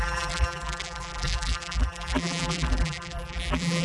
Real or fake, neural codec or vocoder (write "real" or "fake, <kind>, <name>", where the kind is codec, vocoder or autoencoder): fake, vocoder, BigVGAN v2